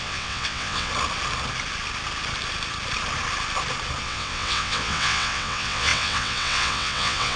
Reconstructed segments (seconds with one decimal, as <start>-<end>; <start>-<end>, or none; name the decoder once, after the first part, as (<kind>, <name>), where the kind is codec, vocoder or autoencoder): 0.0-0.9 (vocoder, WaveNeXt); 4.0-7.4